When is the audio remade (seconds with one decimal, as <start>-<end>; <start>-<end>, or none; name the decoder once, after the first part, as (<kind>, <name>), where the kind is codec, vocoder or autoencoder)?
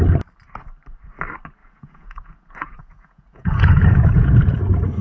1.6-4.6 (vocoder, Vocos)